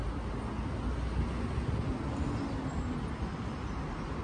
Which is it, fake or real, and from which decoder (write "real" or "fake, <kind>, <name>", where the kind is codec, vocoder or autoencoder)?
real